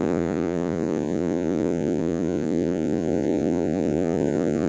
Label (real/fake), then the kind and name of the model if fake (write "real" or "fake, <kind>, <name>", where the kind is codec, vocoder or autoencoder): fake, vocoder, Vocos